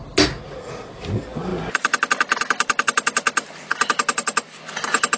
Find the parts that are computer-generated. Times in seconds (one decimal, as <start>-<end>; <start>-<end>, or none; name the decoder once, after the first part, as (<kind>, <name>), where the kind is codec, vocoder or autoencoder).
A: none